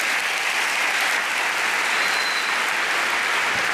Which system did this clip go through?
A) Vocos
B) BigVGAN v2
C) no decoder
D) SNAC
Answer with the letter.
C